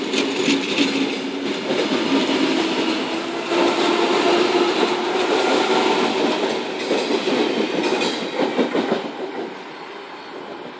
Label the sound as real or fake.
real